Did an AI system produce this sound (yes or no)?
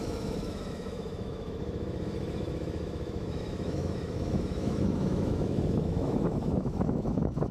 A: yes